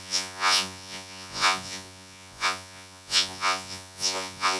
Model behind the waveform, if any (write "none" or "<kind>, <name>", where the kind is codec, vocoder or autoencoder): vocoder, Vocos